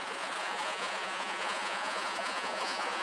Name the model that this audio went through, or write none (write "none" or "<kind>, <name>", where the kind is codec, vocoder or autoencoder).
vocoder, Vocos